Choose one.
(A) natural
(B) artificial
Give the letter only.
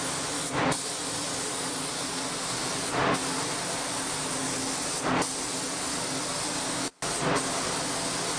A